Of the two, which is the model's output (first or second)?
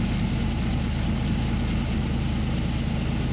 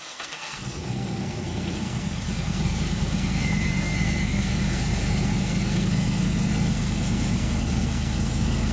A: second